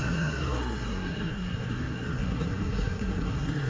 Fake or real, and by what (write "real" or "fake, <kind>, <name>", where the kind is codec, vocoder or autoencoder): fake, codec, SNAC